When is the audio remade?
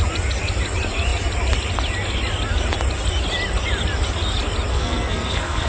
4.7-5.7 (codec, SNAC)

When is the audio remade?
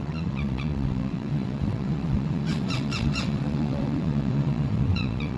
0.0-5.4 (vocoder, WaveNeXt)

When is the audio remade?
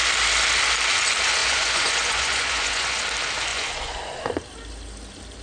1.4-3.0 (vocoder, Vocos); 3.5-4.0